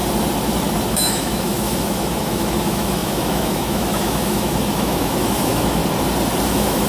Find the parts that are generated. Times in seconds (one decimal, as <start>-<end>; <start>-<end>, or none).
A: 0.9-5.8; 6.5-6.9